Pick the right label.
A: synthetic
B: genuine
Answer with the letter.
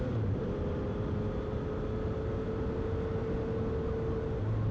B